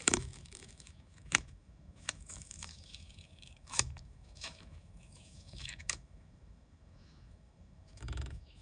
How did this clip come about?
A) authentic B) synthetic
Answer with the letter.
B